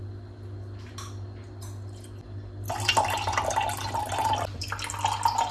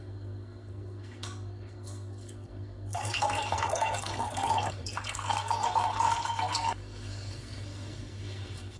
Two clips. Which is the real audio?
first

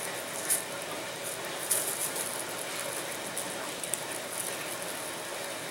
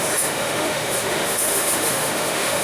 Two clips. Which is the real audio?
first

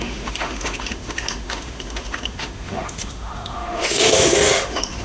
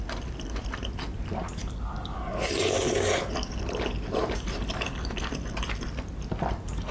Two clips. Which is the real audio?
second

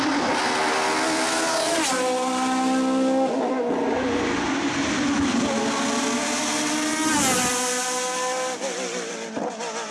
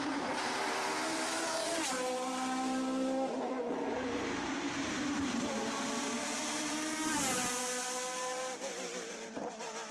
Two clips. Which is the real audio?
first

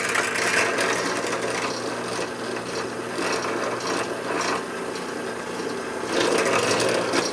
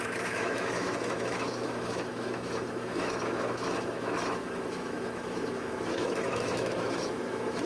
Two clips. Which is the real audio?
first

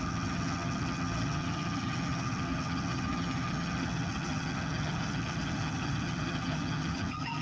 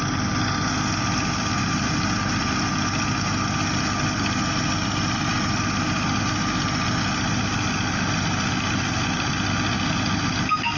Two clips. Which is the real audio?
second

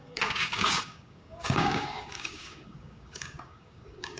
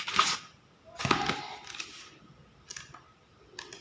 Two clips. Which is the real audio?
second